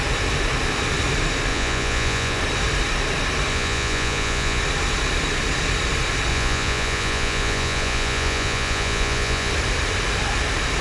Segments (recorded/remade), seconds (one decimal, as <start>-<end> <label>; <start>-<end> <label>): 0.0-1.5 recorded; 1.5-2.4 remade; 2.4-3.5 recorded; 3.5-4.6 remade; 4.6-6.3 recorded; 6.3-9.5 remade; 9.5-10.8 recorded